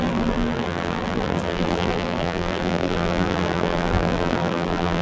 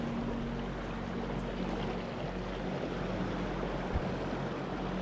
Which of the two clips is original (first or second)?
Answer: second